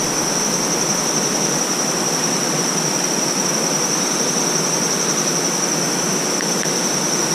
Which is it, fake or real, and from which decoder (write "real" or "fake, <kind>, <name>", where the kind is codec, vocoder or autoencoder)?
real